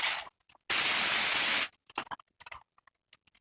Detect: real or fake real